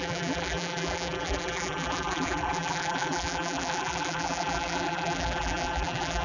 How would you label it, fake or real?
fake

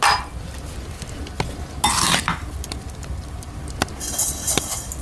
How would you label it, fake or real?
real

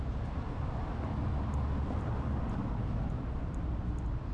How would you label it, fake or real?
real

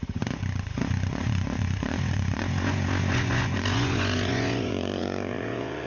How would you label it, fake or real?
fake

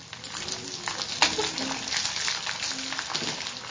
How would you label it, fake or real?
real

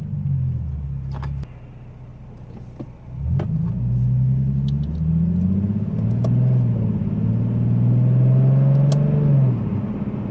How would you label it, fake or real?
real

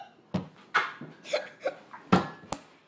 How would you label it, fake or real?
real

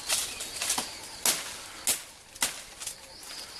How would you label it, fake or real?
real